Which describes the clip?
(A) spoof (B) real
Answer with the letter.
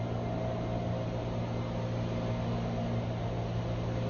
B